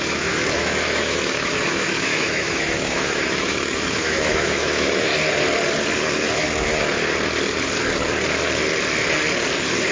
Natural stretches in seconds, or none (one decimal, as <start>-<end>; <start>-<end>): 5.1-9.9